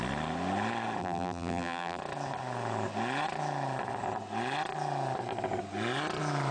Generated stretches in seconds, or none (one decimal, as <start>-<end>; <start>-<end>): 1.0-2.0